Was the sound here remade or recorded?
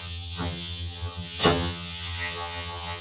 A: remade